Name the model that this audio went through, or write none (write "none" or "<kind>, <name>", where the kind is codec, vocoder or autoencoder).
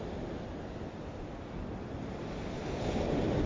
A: none